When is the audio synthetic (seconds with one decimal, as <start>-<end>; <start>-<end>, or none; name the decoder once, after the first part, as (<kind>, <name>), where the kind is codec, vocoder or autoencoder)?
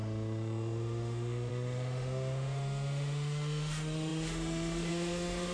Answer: 0.0-5.5 (autoencoder, DAC-VAE)